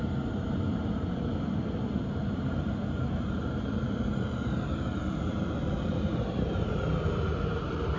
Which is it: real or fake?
fake